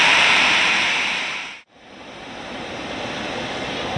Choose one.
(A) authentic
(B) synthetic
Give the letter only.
B